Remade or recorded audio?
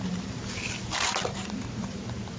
recorded